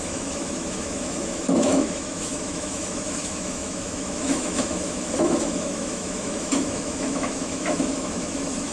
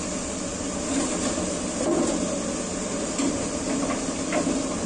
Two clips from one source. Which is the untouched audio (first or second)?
second